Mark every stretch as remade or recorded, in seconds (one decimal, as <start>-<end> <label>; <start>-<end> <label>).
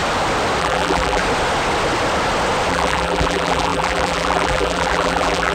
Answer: 0.0-0.6 recorded; 0.6-1.2 remade; 1.2-2.7 recorded; 2.7-5.5 remade